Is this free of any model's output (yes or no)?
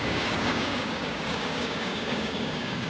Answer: no